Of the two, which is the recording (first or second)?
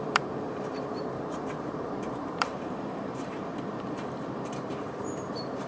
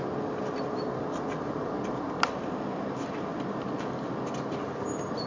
second